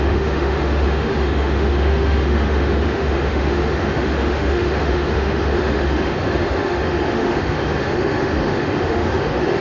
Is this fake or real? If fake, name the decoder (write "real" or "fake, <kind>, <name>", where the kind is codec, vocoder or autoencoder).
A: fake, autoencoder, DAC-VAE